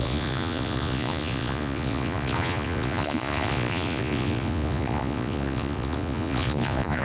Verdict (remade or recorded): remade